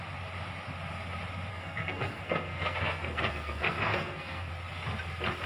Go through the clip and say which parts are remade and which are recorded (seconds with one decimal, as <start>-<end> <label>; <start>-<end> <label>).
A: 0.0-1.5 recorded; 1.5-4.5 remade; 4.5-5.5 recorded